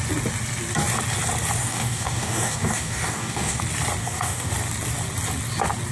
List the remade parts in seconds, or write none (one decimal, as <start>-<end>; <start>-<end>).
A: 1.6-3.6; 4.0-4.5

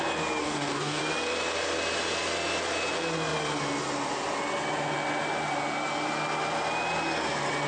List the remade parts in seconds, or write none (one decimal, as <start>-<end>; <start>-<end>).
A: 0.4-1.0

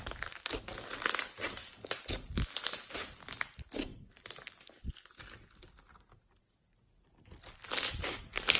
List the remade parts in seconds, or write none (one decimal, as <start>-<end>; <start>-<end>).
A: none

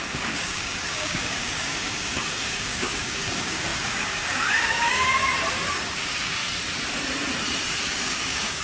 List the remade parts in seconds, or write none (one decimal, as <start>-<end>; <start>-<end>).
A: 0.0-5.2; 5.7-6.4; 7.8-8.6

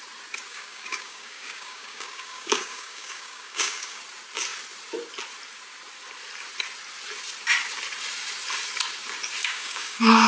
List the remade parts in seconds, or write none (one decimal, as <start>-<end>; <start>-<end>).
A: 0.5-4.0; 9.4-10.3

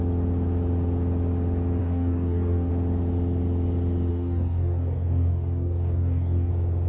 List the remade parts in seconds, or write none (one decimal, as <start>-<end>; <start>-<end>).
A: 1.8-2.7; 4.1-6.5